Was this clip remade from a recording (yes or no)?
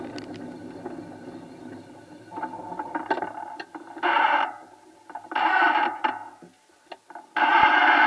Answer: no